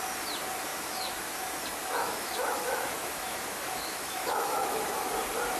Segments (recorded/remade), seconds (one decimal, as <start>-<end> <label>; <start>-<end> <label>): 0.0-0.7 recorded; 0.7-1.3 remade; 1.3-1.8 recorded; 1.8-5.1 remade; 5.1-5.6 recorded